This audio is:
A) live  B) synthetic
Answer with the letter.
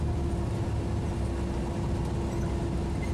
A